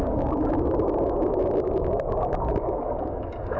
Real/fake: fake